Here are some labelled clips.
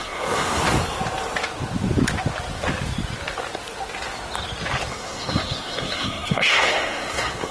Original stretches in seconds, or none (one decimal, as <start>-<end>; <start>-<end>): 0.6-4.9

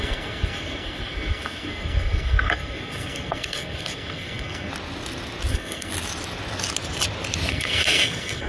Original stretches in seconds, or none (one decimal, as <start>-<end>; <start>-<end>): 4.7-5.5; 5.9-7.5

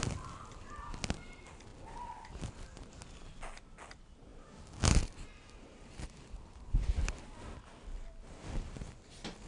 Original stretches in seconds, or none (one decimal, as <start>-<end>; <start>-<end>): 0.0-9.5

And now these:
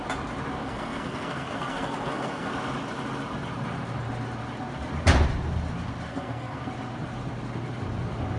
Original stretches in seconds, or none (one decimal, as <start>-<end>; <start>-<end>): 0.0-0.6; 2.5-6.1; 6.7-8.4

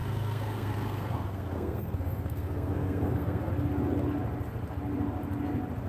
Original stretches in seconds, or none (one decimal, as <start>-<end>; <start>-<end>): 3.5-5.9